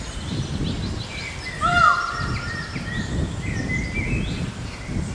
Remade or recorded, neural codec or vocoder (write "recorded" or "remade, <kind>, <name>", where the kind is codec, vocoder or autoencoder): recorded